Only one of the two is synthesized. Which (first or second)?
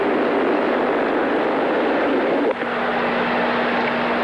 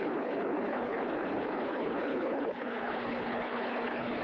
second